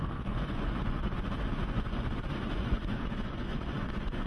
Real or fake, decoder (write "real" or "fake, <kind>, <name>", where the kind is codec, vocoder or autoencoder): fake, vocoder, Vocos